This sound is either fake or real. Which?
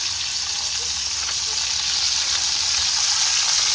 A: real